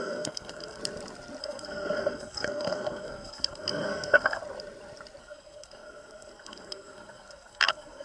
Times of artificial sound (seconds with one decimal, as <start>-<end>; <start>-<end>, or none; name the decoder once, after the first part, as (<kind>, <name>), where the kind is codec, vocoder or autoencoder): 0.0-0.8 (codec, SNAC); 1.4-4.4; 5.2-8.0